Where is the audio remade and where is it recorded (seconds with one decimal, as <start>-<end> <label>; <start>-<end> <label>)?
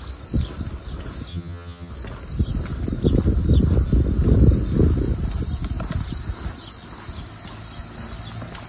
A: 0.0-1.3 recorded; 1.3-1.9 remade; 1.9-8.7 recorded